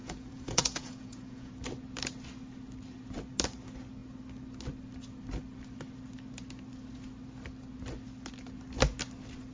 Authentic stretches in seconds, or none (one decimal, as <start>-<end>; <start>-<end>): 1.5-9.5